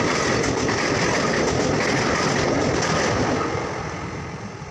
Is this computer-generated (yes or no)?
no